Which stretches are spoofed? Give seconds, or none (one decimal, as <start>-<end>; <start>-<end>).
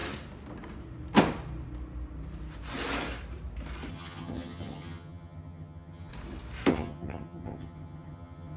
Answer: 3.9-6.1; 6.7-8.6